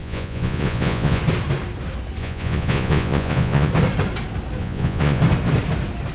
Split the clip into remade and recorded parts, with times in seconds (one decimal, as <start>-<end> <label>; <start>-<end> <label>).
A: 0.0-1.2 remade; 1.2-2.2 recorded; 2.2-3.7 remade; 3.7-4.6 recorded; 4.6-5.2 remade; 5.2-6.1 recorded